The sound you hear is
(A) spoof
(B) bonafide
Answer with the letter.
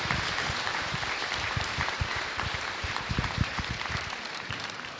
A